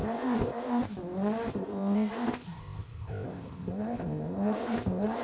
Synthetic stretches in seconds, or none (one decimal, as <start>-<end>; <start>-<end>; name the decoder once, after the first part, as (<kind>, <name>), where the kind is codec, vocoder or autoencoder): 0.0-0.8 (codec, ZipCodec); 1.5-5.2